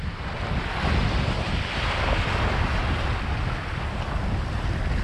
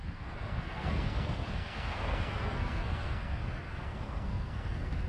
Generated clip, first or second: second